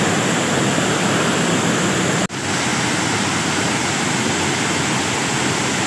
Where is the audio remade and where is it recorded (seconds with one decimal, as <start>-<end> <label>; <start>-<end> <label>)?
0.0-2.7 recorded; 2.7-4.1 remade; 4.1-5.9 recorded